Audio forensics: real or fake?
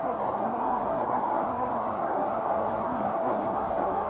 fake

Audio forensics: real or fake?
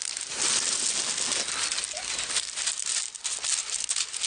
real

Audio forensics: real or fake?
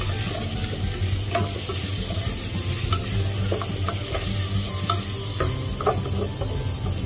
real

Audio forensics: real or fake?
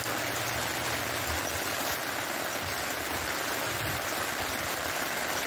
real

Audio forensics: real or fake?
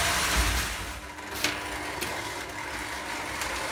real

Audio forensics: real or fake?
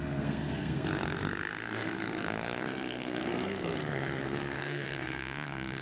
fake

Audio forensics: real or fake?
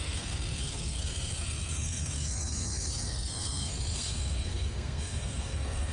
fake